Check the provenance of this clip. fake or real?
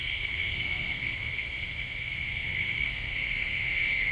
fake